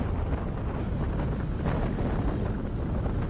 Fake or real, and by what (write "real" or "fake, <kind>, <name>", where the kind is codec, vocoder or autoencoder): real